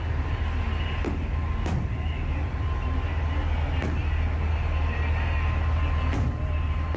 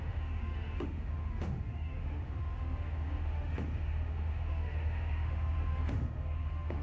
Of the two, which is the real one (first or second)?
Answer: first